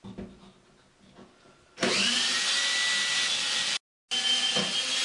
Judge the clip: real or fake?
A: real